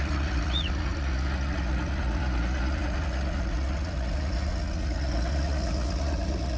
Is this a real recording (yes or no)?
no